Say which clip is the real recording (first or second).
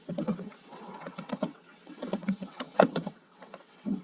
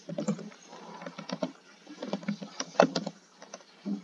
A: second